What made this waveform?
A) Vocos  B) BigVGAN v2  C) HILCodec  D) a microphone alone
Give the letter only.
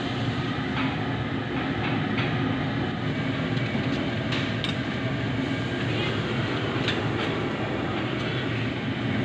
D